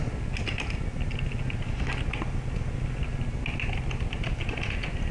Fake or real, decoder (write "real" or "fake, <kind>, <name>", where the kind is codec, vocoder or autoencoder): real